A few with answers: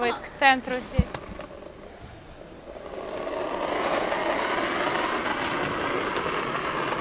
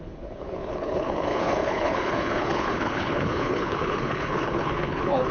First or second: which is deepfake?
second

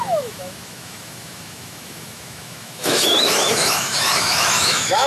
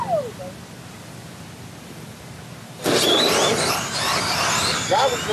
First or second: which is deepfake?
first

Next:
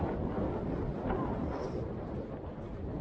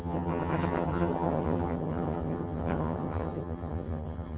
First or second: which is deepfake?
second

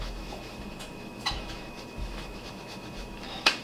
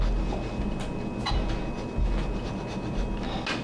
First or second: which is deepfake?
first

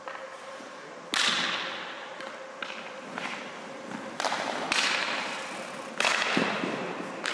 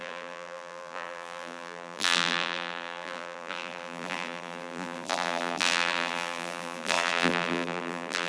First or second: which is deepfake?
second